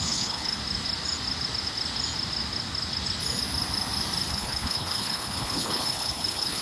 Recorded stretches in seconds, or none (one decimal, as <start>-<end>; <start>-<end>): 0.6-4.3